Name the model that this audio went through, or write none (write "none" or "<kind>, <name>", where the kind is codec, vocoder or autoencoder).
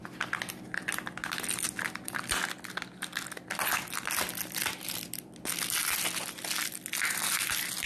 none